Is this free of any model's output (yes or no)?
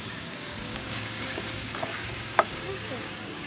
no